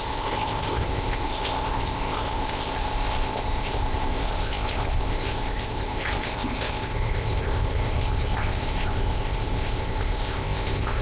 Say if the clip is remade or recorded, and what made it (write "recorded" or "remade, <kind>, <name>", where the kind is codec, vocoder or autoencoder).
remade, codec, ZipCodec